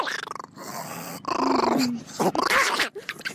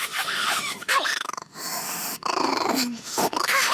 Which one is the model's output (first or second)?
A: second